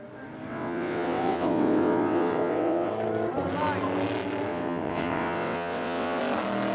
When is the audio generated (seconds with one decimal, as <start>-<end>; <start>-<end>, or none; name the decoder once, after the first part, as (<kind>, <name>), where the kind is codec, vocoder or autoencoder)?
0.5-2.9 (vocoder, WaveNeXt); 4.5-6.2